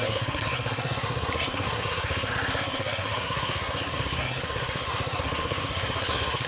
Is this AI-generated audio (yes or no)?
yes